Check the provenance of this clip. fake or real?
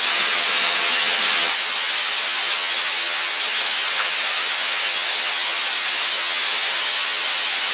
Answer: fake